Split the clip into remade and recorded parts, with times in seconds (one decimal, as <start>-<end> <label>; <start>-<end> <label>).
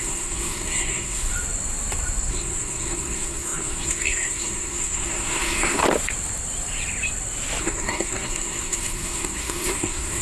0.0-1.3 remade; 1.3-2.3 recorded; 2.3-5.8 remade; 5.8-7.6 recorded; 7.6-10.2 remade